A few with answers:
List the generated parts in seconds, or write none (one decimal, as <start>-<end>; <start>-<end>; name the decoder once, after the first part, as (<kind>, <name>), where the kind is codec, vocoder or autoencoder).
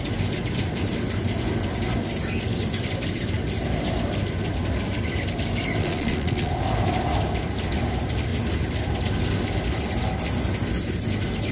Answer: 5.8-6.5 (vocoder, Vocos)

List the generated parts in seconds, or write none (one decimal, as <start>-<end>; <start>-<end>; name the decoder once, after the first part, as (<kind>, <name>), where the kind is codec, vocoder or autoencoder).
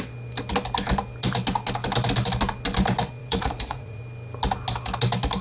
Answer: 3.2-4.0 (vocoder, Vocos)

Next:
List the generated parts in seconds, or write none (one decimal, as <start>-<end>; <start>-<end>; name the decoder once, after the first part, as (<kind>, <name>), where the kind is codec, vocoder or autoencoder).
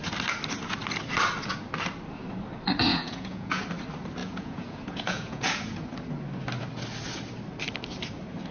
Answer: 2.9-3.6 (vocoder, Vocos); 4.2-5.9